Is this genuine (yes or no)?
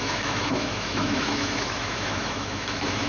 no